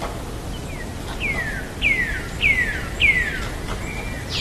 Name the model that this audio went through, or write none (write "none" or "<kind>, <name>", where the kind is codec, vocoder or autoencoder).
none